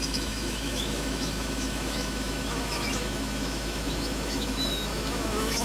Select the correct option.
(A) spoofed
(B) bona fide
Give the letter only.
A